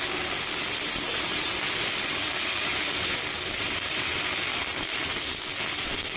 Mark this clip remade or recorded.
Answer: recorded